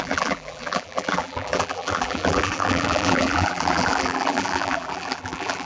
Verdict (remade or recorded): remade